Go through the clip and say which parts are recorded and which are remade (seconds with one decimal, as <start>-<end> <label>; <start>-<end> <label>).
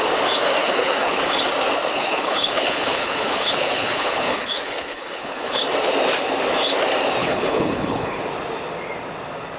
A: 0.0-0.6 recorded; 0.6-1.2 remade; 1.2-1.9 recorded; 1.9-5.6 remade; 5.6-7.2 recorded; 7.2-8.2 remade; 8.2-9.6 recorded